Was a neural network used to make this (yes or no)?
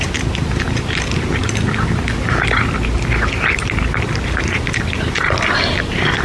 no